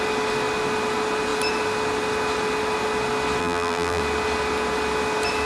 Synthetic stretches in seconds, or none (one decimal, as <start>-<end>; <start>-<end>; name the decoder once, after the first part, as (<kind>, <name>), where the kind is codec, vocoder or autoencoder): 3.4-4.0 (vocoder, BigVGAN v2)